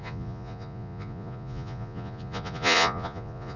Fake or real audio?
fake